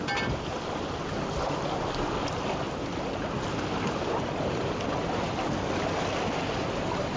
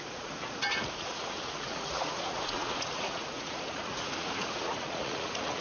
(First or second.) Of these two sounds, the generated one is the second